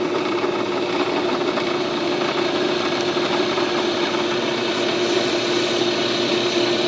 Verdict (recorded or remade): recorded